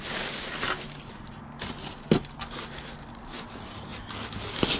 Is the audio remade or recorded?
recorded